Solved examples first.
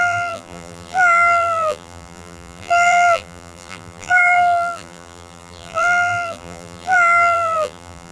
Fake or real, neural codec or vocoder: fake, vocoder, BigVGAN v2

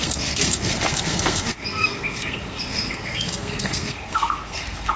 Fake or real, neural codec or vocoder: fake, codec, SNAC